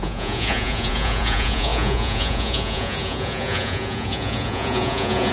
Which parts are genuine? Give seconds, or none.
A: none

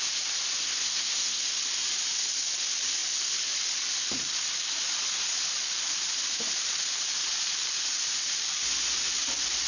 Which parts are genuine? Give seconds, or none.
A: 0.0-0.6; 1.4-9.7